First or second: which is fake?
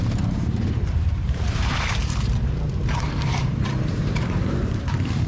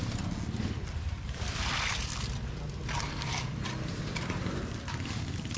first